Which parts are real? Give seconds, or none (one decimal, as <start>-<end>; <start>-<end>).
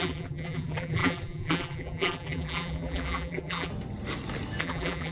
3.7-4.6